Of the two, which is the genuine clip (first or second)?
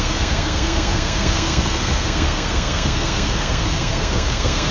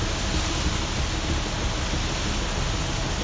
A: second